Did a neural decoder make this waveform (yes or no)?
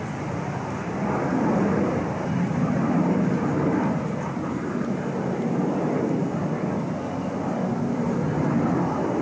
no